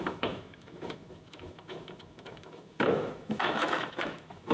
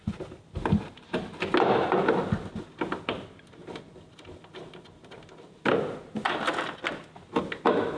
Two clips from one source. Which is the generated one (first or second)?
first